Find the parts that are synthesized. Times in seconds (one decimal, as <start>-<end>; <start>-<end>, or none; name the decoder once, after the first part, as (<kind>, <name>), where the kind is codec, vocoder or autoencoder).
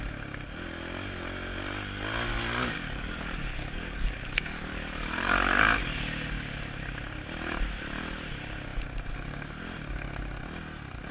2.3-6.0 (codec, DAC)